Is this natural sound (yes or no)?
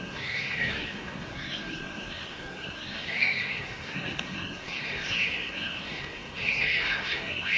no